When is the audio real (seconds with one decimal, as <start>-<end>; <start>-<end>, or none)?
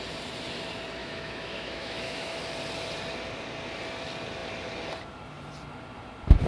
0.0-1.0; 2.4-6.5